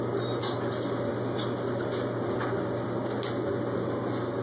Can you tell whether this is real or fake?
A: real